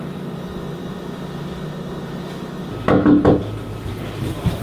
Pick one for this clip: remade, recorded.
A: remade